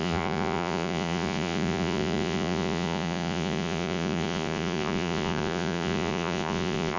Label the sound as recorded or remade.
remade